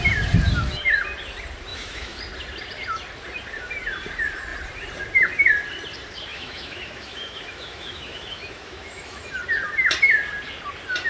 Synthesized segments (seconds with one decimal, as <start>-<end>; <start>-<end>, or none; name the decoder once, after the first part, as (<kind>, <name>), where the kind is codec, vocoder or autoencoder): 1.7-2.2 (autoencoder, DAC-VAE); 6.3-9.3